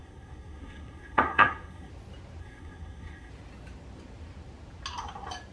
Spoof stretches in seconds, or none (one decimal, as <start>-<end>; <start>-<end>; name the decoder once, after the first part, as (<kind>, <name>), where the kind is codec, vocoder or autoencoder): 0.0-1.9 (codec, SNAC); 2.4-3.3